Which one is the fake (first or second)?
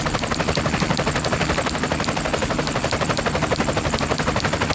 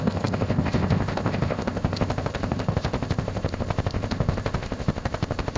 second